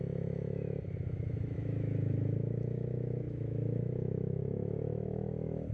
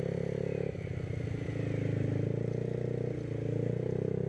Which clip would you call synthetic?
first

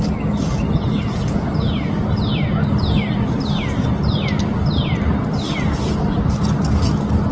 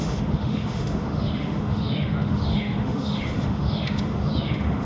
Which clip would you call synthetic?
second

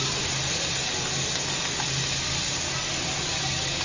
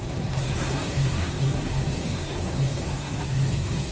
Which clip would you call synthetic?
second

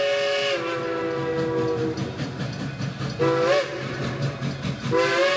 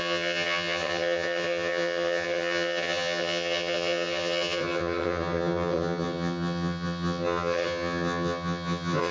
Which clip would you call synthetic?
second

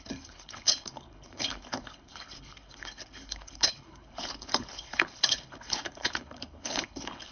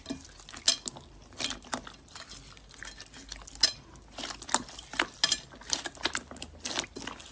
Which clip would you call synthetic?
first